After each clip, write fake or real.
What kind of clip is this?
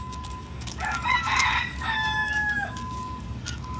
fake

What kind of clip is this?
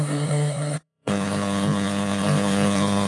fake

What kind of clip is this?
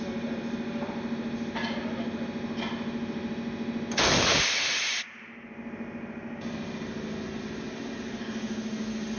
real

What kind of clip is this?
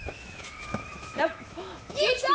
fake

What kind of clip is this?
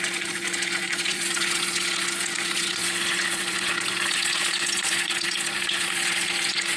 fake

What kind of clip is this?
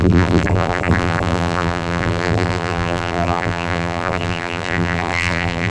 fake